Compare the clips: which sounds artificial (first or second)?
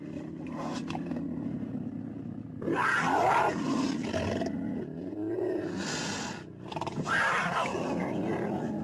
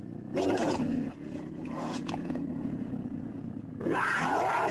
second